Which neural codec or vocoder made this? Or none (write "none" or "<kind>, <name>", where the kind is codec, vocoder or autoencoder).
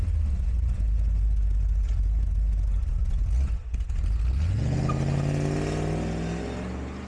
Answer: none